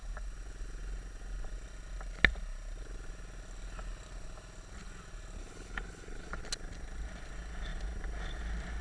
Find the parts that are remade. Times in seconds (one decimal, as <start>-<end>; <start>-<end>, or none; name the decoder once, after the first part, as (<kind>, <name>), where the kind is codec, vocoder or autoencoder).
5.4-6.4 (codec, HILCodec)